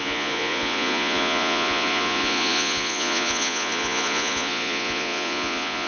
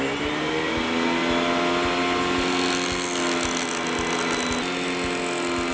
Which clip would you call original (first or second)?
second